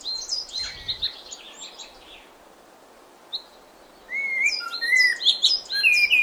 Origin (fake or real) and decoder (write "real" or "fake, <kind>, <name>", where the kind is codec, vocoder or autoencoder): real